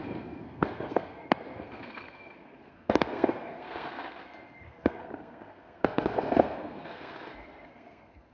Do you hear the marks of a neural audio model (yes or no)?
yes